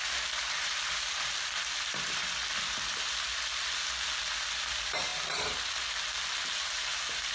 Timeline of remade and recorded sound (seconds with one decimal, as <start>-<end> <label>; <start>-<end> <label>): 0.0-7.3 recorded